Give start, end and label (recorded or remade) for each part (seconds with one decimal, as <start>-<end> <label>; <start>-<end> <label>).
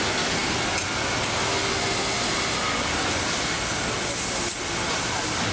0.0-5.5 recorded